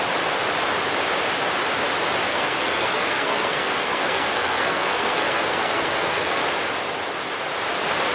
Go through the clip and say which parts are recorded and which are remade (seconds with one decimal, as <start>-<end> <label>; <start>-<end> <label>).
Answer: 0.0-2.3 recorded; 2.3-6.4 remade; 6.4-8.1 recorded